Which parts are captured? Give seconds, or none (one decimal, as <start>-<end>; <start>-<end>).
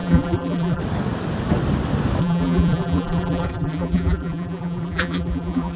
0.8-2.2